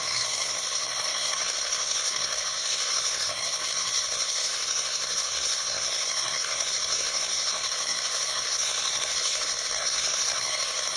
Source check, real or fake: fake